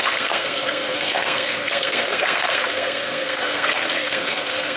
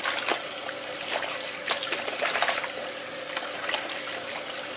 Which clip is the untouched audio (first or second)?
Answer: second